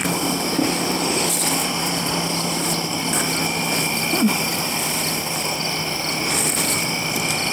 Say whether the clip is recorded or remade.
remade